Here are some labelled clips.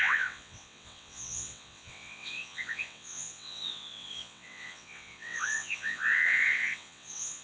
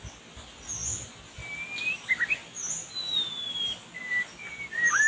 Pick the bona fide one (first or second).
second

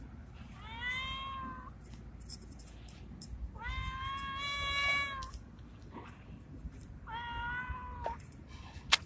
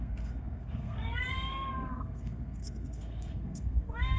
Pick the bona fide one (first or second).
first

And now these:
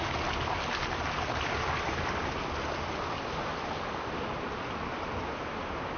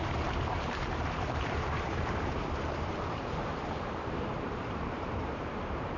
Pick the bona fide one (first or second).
first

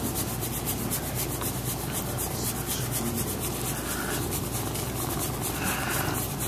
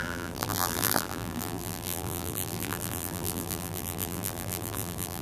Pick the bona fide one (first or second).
first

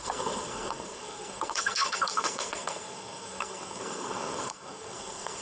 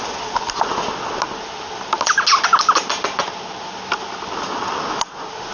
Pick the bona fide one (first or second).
second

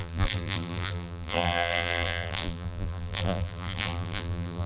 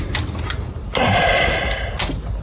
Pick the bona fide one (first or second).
second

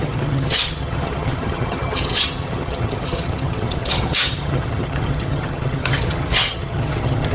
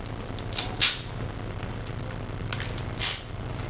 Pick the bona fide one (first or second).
second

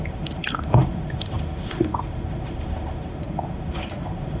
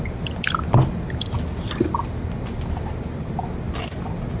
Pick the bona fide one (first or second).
second